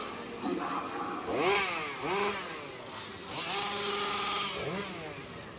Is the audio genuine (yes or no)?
yes